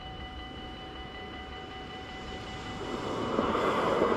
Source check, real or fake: fake